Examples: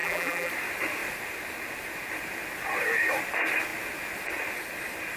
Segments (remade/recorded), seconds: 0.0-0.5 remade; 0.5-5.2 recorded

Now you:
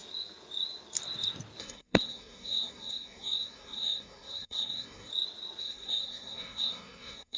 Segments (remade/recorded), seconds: 0.0-1.6 recorded; 1.6-5.1 remade; 5.1-5.6 recorded; 5.6-7.4 remade

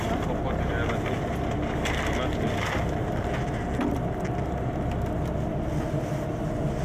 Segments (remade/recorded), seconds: 0.0-6.8 recorded

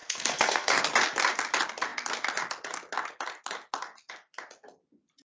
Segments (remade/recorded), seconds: 0.0-0.8 remade; 0.8-5.3 recorded

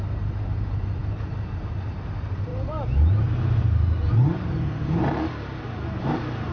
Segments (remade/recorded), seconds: 0.0-6.5 remade

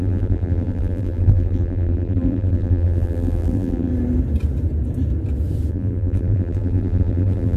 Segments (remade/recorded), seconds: 0.0-3.9 remade; 3.9-5.7 recorded; 5.7-7.6 remade

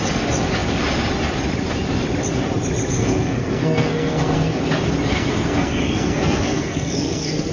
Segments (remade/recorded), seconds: 0.0-2.9 recorded; 2.9-4.6 remade; 4.6-5.1 recorded; 5.1-7.5 remade